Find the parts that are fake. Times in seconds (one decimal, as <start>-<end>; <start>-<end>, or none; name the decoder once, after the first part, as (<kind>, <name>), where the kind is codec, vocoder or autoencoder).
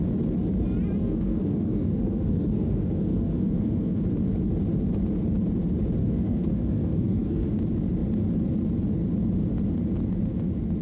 1.0-4.0 (codec, SNAC); 6.0-7.5